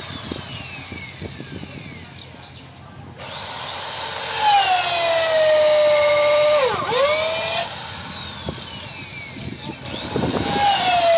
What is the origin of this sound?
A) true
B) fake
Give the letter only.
A